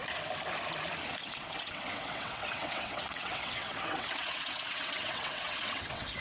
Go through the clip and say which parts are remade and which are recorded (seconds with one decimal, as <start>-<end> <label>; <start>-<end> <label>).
0.0-1.2 recorded; 1.2-6.2 remade

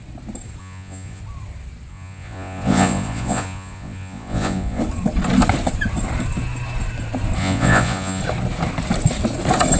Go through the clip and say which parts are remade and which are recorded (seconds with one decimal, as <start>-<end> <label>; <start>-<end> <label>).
0.0-0.6 recorded; 0.6-1.2 remade; 1.2-1.9 recorded; 1.9-4.8 remade; 4.8-7.4 recorded; 7.4-8.2 remade; 8.2-9.8 recorded